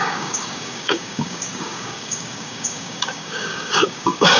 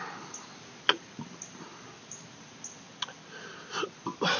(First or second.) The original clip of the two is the second